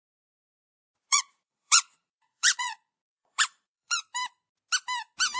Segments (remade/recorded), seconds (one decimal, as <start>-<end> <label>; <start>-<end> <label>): 0.0-1.1 recorded; 1.1-4.0 remade; 4.0-5.4 recorded